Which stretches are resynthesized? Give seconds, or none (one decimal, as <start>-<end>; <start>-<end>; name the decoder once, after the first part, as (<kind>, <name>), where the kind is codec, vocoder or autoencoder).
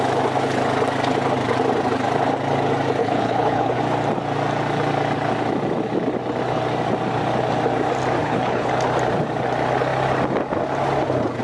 3.0-3.8 (codec, HILCodec); 8.2-8.7